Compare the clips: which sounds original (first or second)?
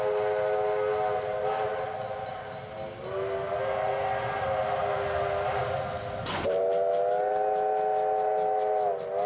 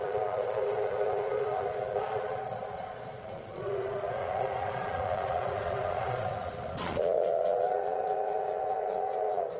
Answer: first